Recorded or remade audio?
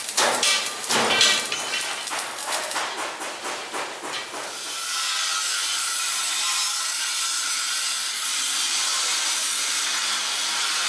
remade